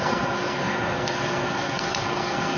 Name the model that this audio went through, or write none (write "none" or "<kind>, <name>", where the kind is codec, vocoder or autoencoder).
codec, SNAC